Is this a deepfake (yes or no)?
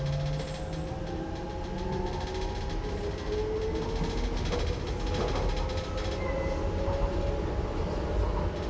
no